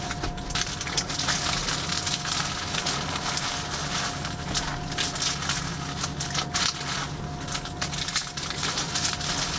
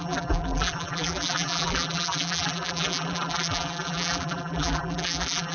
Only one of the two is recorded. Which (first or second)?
first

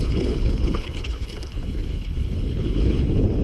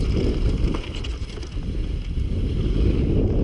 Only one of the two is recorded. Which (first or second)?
second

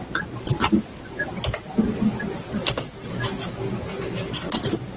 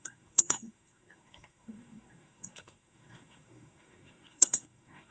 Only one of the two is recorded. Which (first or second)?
first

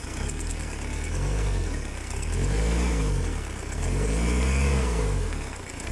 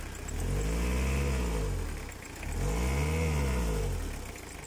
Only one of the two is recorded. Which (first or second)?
second